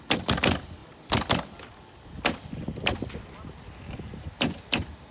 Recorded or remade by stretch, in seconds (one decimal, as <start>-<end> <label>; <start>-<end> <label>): 0.0-5.1 recorded